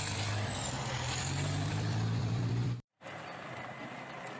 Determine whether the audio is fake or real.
fake